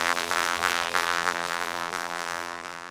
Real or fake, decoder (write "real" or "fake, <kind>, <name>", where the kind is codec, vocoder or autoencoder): fake, vocoder, BigVGAN v2